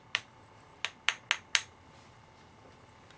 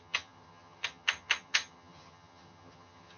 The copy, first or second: second